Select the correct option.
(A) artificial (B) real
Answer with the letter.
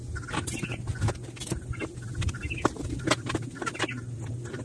B